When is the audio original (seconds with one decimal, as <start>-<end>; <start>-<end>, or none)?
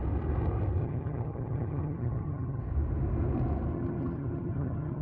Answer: 0.0-0.8; 2.6-3.7